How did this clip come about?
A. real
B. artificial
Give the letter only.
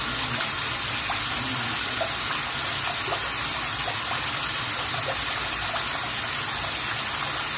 A